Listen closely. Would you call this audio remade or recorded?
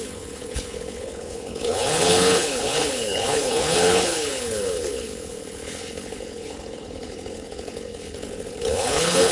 remade